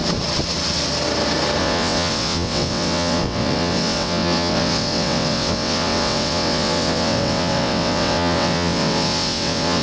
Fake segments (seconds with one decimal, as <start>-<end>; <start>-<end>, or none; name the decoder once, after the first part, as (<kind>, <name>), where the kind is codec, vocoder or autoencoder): 1.6-9.8 (vocoder, WaveNeXt)